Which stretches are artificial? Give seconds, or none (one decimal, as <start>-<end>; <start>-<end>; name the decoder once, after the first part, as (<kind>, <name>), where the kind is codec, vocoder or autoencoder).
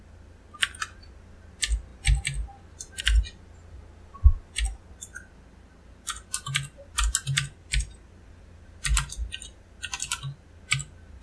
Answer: none